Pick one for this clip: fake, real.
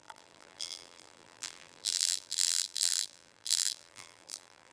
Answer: fake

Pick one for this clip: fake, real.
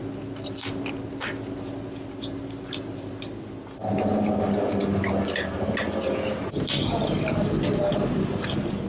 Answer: real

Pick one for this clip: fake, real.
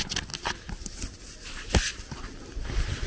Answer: real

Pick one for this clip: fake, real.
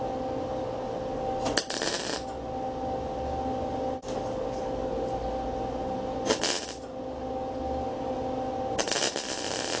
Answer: real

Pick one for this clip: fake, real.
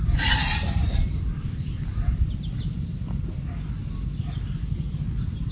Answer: fake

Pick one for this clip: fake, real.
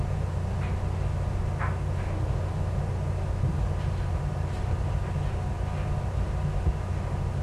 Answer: real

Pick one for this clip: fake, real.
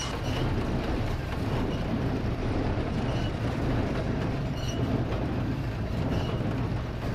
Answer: fake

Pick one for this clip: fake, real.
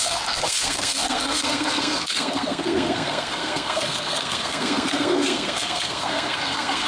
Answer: fake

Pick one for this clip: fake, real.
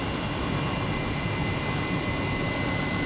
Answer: real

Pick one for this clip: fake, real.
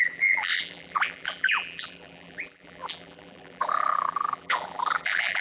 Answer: fake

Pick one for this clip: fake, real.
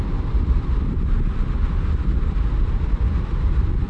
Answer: real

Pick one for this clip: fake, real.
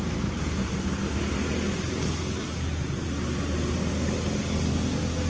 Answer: real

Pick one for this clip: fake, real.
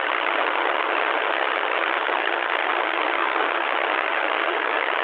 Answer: fake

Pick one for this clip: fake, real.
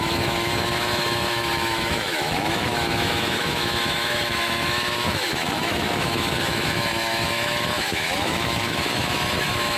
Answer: fake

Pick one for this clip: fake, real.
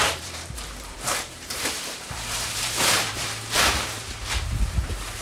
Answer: fake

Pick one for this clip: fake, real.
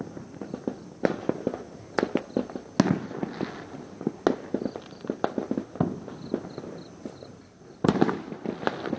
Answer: real